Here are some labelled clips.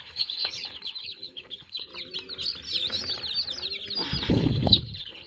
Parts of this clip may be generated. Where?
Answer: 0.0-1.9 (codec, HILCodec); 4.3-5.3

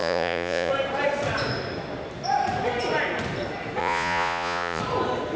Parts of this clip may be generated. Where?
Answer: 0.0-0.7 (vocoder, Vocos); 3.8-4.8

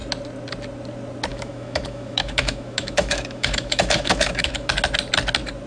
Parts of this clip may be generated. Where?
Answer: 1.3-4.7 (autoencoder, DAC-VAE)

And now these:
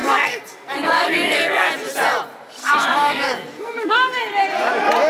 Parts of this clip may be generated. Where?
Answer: 0.0-1.7 (codec, SNAC); 2.6-4.2

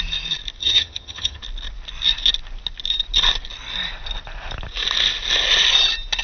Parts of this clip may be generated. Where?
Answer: 0.6-1.4 (vocoder, HiFi-GAN)

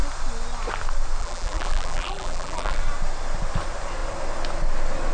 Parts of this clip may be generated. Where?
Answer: 1.2-2.8 (vocoder, BigVGAN v2)

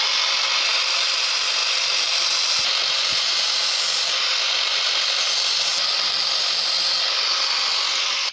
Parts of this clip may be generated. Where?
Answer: none

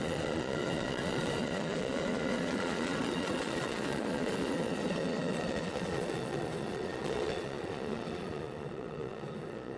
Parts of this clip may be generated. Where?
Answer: 0.0-9.8 (vocoder, Vocos)